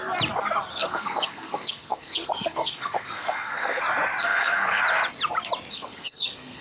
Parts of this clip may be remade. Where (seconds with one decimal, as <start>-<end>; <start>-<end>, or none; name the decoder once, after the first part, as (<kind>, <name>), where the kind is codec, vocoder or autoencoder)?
0.7-3.8 (codec, SNAC); 4.2-4.8; 5.7-6.6